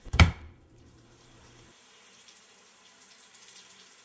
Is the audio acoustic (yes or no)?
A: no